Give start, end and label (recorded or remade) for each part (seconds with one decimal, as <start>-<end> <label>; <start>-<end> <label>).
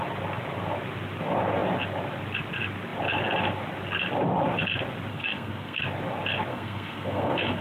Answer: 0.0-5.1 recorded; 5.1-5.8 remade; 5.8-6.5 recorded; 6.5-7.6 remade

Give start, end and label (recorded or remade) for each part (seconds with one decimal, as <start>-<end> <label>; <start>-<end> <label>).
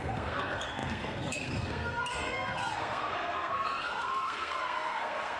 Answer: 0.0-5.4 remade